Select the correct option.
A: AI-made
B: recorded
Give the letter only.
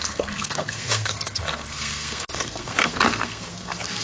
A